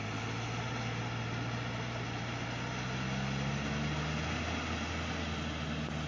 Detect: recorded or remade recorded